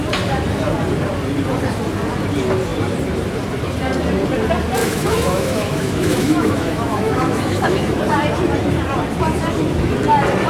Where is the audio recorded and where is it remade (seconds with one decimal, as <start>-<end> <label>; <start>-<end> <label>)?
0.0-4.8 recorded; 4.8-8.0 remade; 8.0-10.5 recorded